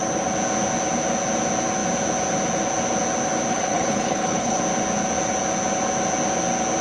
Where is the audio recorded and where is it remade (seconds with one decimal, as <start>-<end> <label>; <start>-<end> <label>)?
0.0-3.5 recorded; 3.5-4.6 remade; 4.6-6.8 recorded